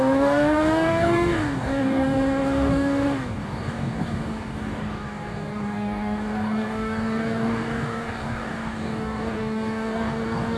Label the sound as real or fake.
fake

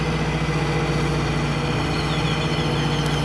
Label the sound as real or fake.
real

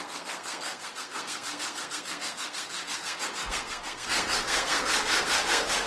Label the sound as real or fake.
fake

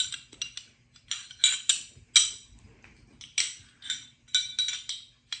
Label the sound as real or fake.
real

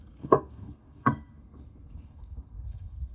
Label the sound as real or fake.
fake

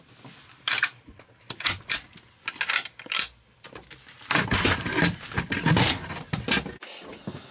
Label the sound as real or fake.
real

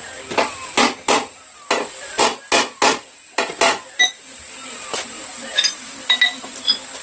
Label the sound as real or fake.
real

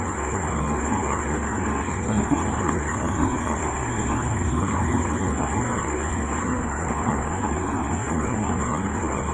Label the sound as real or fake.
fake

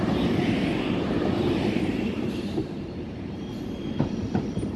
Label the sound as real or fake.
fake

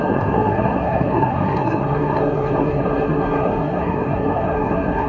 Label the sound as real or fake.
fake